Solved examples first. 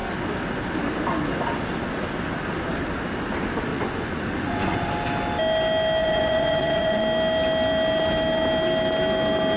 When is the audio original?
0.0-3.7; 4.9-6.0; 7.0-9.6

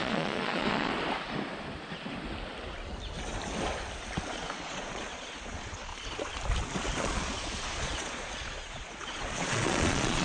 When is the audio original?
0.9-4.3; 5.9-7.0

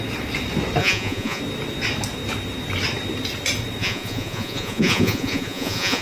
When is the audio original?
0.0-0.8; 1.4-3.8

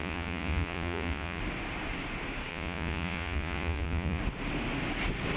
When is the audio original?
1.4-2.5; 4.2-5.4